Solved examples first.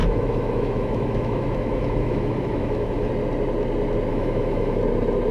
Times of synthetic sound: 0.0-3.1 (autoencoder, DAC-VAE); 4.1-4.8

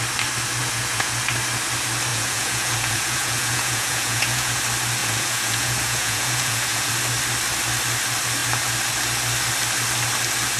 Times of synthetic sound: 0.6-1.3 (vocoder, Vocos); 2.1-4.6; 5.0-6.9

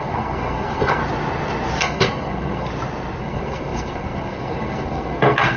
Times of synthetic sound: 0.0-1.0 (codec, SNAC); 1.8-2.7; 3.2-5.6

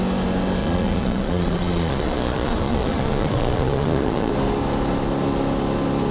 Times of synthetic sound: 0.6-4.3 (vocoder, Vocos)

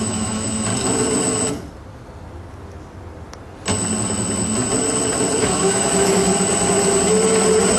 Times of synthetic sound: 0.0-0.7 (autoencoder, DAC-VAE); 5.4-6.3

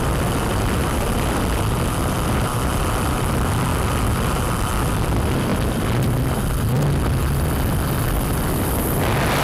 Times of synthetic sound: 0.5-3.2 (vocoder, BigVGAN v2); 3.7-5.1

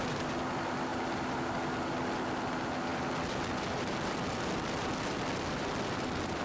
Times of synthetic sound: none

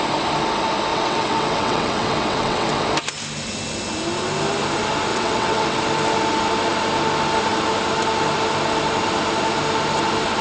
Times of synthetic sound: 0.9-2.8 (vocoder, WaveNeXt); 5.1-5.8